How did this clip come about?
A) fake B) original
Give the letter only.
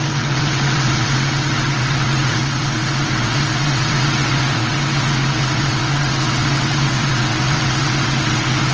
A